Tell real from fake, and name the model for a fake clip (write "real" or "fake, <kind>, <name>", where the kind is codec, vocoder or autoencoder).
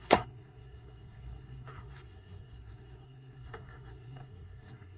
fake, codec, SNAC